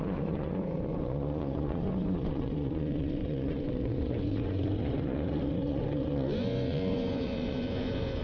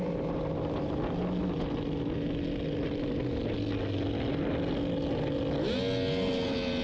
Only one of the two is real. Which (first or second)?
second